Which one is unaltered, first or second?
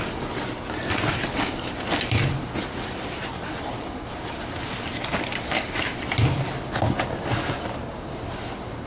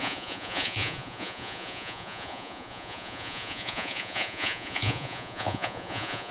first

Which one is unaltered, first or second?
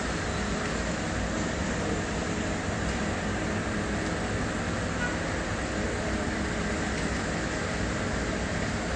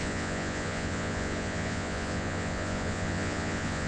first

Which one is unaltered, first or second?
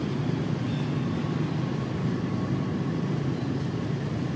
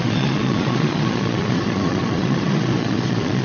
first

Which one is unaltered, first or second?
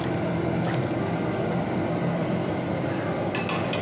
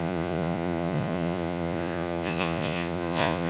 first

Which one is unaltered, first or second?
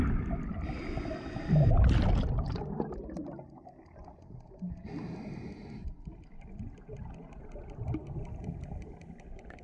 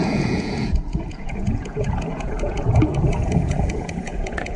first